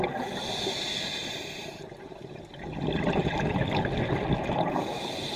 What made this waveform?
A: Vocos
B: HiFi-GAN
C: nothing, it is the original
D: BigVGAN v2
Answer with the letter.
C